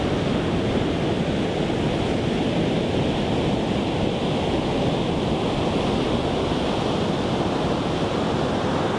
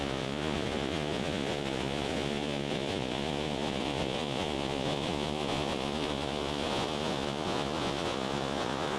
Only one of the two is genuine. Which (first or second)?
first